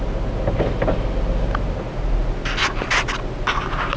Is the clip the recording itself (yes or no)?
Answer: yes